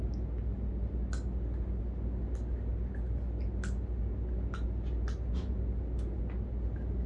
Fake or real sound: real